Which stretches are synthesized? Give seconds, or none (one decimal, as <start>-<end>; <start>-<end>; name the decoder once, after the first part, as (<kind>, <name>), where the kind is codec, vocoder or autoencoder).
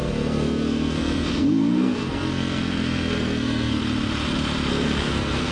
0.0-3.8 (codec, SNAC); 4.7-5.5